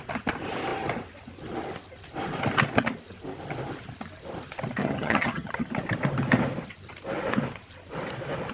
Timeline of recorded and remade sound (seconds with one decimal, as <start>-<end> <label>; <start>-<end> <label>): 0.0-4.8 recorded; 4.8-5.7 remade; 5.7-8.5 recorded